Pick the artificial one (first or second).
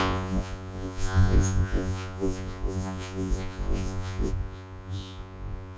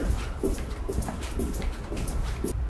first